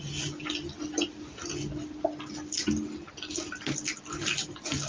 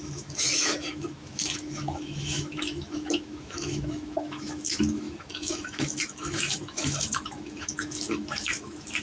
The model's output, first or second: second